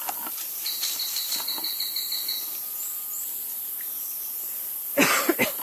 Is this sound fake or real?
real